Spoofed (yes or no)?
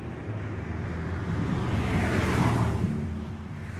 no